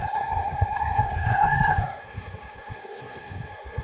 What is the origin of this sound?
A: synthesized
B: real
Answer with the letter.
A